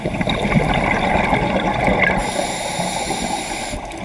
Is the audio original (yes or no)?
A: yes